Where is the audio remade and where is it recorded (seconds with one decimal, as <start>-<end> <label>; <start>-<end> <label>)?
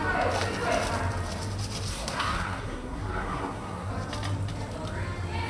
0.0-1.9 recorded; 1.9-3.9 remade; 3.9-5.5 recorded